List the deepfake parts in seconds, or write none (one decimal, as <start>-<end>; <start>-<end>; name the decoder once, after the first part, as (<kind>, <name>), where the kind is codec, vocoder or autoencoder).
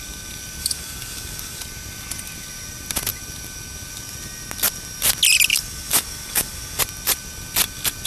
0.6-1.6 (codec, DAC); 5.5-6.8